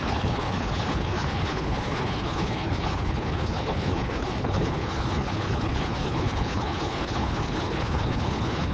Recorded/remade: remade